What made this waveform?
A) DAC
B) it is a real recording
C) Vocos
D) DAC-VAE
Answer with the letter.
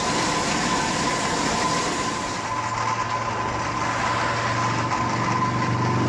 B